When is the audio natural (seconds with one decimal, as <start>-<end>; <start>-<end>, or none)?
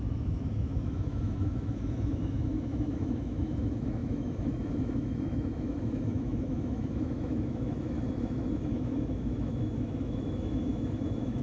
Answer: none